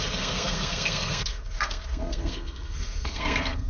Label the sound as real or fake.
fake